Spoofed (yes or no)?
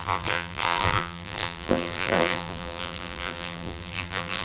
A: yes